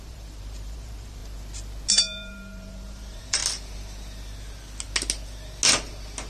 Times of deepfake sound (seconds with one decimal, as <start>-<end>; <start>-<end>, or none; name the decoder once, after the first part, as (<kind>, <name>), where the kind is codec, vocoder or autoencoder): 0.0-1.2 (vocoder, BigVGAN v2); 1.9-3.4